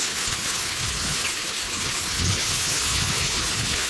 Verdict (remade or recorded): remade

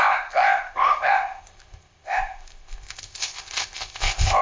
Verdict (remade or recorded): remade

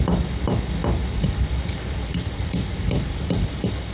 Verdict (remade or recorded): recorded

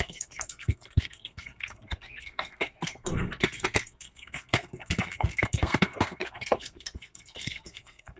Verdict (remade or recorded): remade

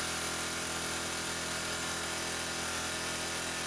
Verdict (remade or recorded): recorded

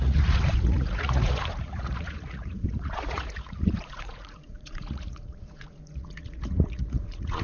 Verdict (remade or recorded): remade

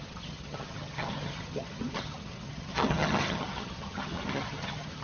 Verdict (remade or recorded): remade